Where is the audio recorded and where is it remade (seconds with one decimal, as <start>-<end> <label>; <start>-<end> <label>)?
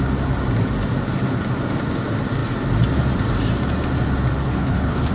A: 0.0-4.4 recorded; 4.4-5.1 remade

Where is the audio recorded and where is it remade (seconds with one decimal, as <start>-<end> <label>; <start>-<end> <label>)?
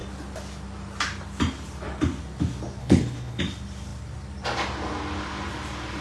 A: 0.0-2.8 recorded; 2.8-3.4 remade; 3.4-6.0 recorded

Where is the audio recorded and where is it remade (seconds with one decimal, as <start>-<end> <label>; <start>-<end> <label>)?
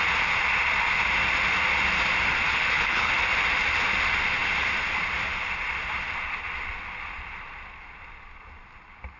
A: 0.0-2.5 recorded; 2.5-3.1 remade; 3.1-9.2 recorded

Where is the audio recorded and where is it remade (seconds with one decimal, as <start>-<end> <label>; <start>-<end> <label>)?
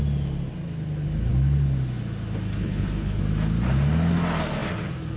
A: 0.0-2.6 recorded; 2.6-3.2 remade; 3.2-5.2 recorded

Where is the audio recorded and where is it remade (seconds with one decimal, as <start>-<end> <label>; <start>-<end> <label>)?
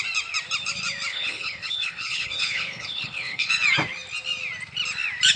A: 0.0-1.1 recorded; 1.1-3.5 remade; 3.5-5.4 recorded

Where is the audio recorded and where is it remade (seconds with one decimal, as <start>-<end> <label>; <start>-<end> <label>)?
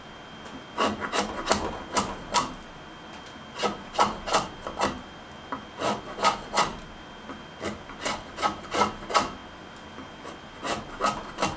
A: 0.0-11.6 recorded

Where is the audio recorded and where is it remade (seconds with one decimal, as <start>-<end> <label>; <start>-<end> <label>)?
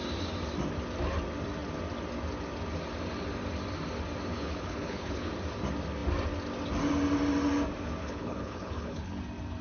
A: 0.0-4.3 recorded; 4.3-5.3 remade; 5.3-8.0 recorded; 8.0-9.2 remade; 9.2-9.6 recorded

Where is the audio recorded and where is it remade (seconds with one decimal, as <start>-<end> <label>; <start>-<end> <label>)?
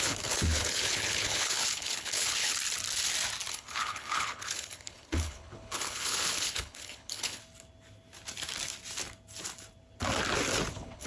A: 0.0-2.6 remade; 2.6-3.5 recorded; 3.5-7.4 remade; 7.4-10.7 recorded; 10.7-11.1 remade